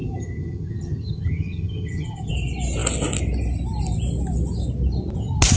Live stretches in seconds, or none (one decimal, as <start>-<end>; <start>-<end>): 2.3-5.6